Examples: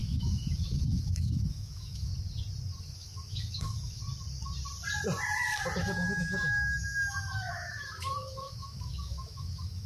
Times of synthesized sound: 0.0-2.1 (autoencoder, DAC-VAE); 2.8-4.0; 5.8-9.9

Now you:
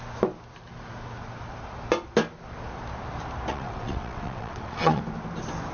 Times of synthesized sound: 3.5-5.0 (vocoder, WaveNeXt)